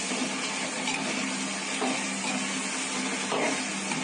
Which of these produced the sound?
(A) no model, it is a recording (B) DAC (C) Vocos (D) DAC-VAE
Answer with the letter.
A